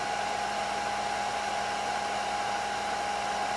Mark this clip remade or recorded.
recorded